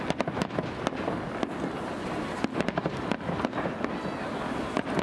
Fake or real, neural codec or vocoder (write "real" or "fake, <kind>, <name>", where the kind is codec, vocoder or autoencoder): real